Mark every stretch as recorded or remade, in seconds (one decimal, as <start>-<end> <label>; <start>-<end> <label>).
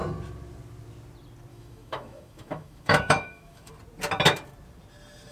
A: 0.0-1.5 recorded; 1.5-3.7 remade; 3.7-5.3 recorded